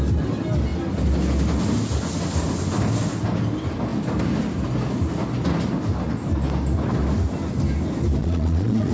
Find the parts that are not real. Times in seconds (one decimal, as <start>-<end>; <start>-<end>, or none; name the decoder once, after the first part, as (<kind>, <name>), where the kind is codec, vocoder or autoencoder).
8.2-8.9 (vocoder, Vocos)